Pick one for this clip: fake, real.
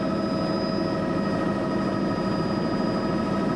real